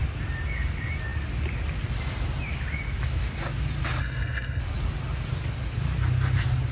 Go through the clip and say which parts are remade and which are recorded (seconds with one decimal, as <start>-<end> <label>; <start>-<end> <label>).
0.0-4.0 recorded; 4.0-4.6 remade; 4.6-6.7 recorded